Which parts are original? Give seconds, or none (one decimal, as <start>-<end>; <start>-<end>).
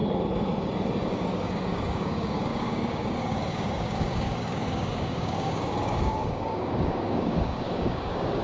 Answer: 0.0-1.1